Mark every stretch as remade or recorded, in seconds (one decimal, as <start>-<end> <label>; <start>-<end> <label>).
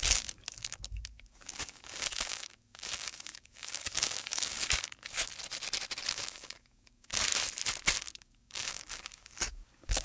0.0-5.3 remade; 5.3-6.1 recorded; 6.1-7.3 remade; 7.3-8.1 recorded; 8.1-10.0 remade